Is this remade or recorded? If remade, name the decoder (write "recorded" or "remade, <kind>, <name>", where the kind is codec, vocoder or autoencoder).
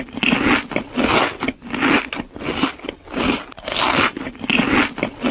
recorded